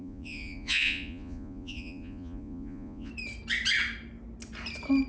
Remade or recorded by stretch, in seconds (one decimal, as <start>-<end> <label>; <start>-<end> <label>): 0.0-3.1 remade; 3.1-5.1 recorded